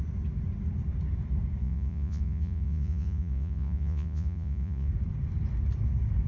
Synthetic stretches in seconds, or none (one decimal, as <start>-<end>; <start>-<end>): 1.6-4.9